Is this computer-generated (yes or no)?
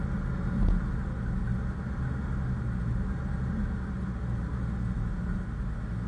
no